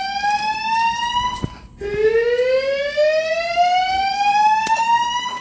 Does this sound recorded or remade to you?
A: recorded